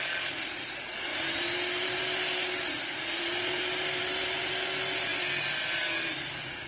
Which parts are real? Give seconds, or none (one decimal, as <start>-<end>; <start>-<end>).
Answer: 0.0-6.7